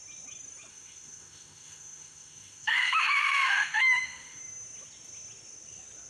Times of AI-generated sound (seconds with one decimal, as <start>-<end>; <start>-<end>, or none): 0.7-4.4